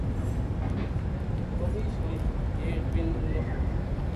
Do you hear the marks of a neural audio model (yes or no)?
no